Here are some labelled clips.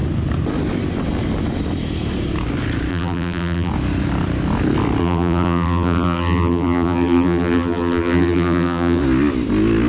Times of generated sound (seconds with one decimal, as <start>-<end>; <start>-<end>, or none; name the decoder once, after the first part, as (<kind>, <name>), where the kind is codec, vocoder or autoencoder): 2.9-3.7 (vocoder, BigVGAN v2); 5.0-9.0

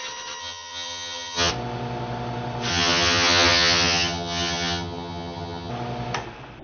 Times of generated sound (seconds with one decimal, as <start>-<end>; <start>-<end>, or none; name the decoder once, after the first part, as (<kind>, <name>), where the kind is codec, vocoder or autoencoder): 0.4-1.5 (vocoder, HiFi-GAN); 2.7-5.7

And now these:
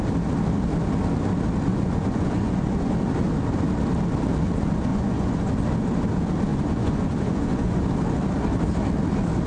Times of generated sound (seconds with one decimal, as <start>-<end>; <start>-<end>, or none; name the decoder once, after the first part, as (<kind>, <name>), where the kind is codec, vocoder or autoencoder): 1.7-2.9 (vocoder, Vocos); 4.9-5.5; 6.5-7.8

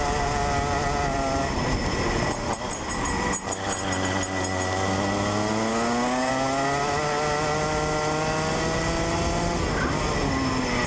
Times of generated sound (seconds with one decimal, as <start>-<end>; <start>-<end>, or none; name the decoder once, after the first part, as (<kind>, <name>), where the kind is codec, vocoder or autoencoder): 5.7-6.3 (codec, DAC)